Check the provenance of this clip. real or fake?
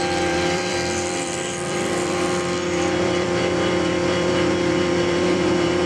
fake